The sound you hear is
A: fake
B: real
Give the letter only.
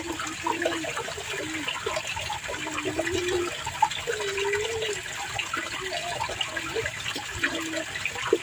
B